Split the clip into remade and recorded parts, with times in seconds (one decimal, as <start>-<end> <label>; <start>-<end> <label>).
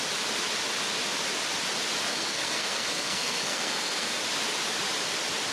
0.0-2.1 recorded; 2.1-4.2 remade; 4.2-5.5 recorded